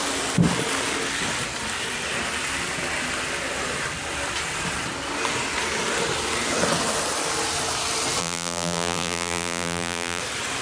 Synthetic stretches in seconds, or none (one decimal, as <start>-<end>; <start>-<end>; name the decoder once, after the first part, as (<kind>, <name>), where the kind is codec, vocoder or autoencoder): 8.2-10.2 (vocoder, BigVGAN v2)